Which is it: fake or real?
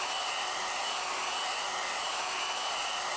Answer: real